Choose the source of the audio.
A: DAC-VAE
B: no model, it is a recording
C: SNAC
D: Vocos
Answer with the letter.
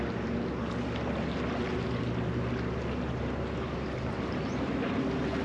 B